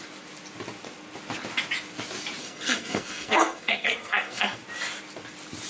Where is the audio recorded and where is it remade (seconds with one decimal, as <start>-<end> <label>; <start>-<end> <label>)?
0.0-2.4 recorded; 2.4-4.6 remade; 4.6-5.7 recorded

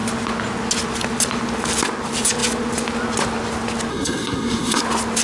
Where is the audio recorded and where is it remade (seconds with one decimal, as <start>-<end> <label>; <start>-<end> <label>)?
0.0-3.9 recorded; 3.9-4.8 remade; 4.8-5.2 recorded

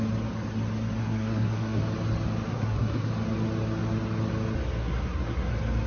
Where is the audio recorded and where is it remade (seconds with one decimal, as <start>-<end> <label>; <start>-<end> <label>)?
0.0-1.0 recorded; 1.0-1.8 remade; 1.8-2.5 recorded; 2.5-3.1 remade; 3.1-4.8 recorded; 4.8-5.5 remade; 5.5-5.9 recorded